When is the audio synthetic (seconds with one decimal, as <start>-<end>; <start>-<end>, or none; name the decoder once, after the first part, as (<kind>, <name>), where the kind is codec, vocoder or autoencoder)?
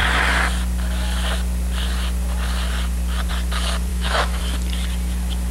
3.9-4.4 (autoencoder, DAC-VAE)